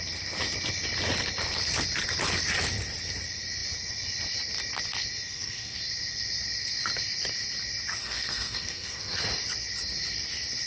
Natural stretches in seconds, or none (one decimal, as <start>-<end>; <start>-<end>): 0.0-5.3; 5.8-8.0; 9.2-10.7